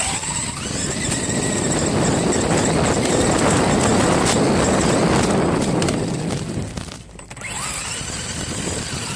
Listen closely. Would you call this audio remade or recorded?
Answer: remade